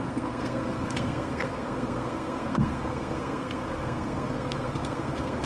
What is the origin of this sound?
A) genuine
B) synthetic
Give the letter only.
B